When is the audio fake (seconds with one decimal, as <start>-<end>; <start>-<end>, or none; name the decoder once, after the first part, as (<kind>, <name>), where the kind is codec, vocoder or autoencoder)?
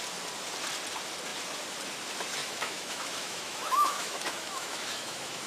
2.4-5.5 (autoencoder, DAC-VAE)